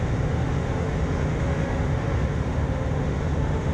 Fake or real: fake